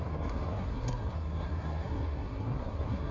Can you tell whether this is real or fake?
fake